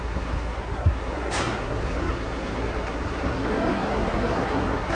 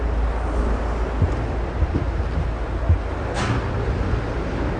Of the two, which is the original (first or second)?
second